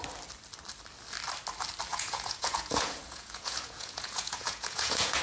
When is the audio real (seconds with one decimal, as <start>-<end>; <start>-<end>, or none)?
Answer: 0.0-1.9